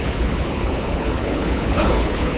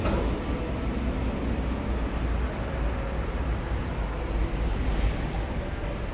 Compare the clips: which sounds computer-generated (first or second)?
first